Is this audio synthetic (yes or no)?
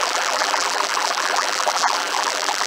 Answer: yes